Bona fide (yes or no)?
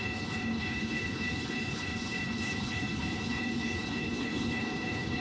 no